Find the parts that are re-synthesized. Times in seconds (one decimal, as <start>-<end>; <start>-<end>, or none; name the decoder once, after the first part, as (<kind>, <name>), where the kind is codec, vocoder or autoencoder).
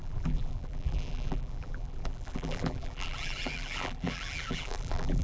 0.0-5.2 (vocoder, BigVGAN v2)